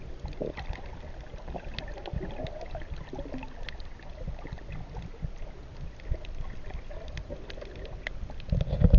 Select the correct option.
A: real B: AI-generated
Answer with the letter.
A